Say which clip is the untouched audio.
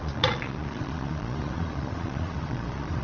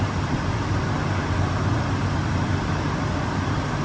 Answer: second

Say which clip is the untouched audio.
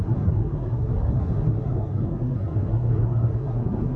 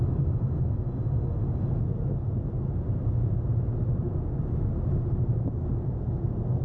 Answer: second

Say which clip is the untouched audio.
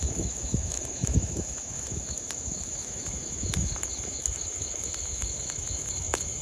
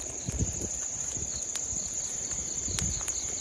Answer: second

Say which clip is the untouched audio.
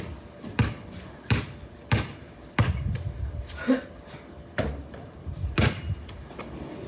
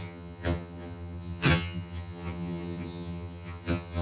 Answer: first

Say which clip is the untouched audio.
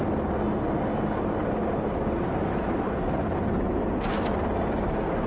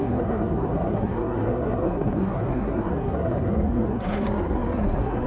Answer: first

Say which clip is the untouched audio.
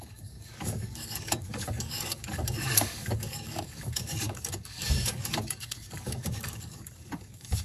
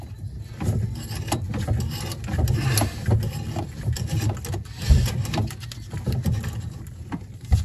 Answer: second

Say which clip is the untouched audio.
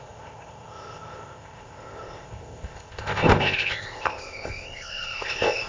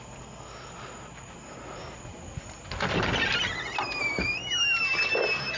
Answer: second